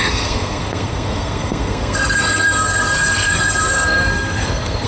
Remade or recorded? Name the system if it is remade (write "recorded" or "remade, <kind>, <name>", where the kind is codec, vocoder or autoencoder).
remade, codec, SNAC